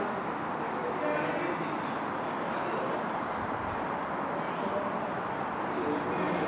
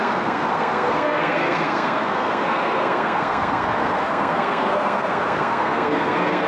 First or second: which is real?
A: first